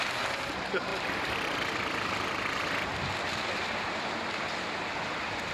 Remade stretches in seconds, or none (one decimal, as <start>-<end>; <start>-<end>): 0.9-1.9; 2.9-4.5

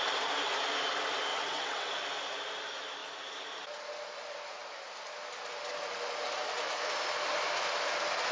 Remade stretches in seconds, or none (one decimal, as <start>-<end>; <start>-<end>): 1.3-1.9

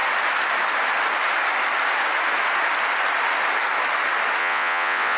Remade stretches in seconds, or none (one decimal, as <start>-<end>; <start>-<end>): 4.4-5.2

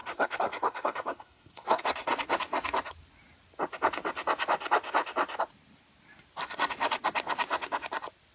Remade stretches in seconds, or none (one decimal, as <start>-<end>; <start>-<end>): 0.0-1.8

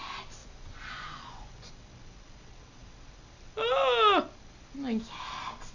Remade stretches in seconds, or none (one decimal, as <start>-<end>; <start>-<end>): 0.4-1.7

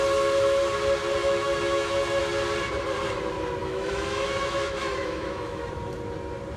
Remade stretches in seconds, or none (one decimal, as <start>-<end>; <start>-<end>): 1.2-2.2; 3.6-5.7